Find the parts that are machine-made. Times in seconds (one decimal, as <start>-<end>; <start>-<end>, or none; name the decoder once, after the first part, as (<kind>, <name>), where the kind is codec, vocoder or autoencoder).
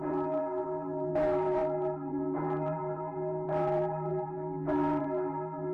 0.0-5.7 (vocoder, BigVGAN v2)